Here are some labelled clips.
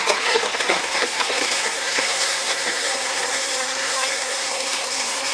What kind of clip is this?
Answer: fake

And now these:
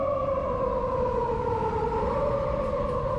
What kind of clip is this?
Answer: real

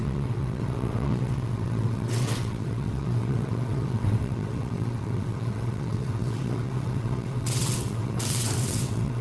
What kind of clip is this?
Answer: fake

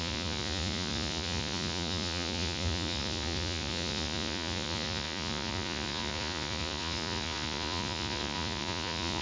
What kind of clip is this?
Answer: fake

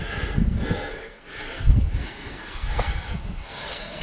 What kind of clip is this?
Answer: fake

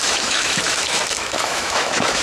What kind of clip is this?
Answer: fake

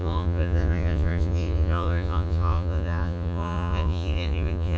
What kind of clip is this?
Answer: fake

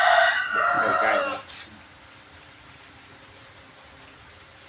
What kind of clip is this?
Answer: real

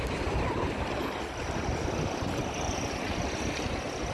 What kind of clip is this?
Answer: real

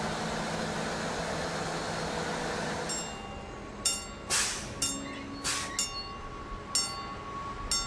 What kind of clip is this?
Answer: real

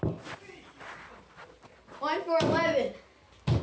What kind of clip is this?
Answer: real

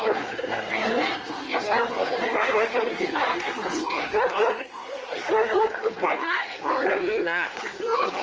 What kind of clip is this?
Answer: fake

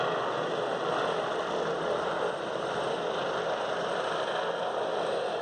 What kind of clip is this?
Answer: real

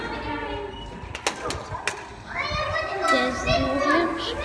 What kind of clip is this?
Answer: real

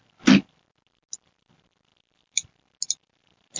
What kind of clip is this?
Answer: real